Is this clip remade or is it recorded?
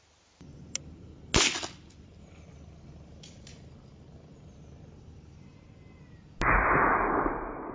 recorded